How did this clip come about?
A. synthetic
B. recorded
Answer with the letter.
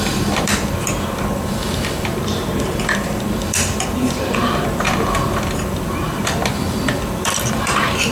A